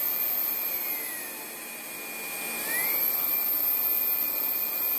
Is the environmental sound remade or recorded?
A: recorded